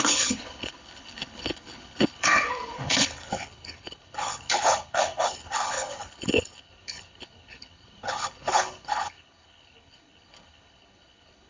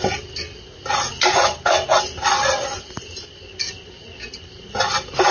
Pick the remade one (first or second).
first